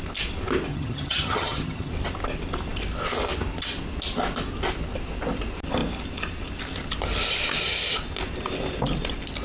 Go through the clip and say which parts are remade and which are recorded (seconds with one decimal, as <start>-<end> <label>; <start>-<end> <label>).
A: 0.0-0.7 recorded; 0.7-1.9 remade; 1.9-9.4 recorded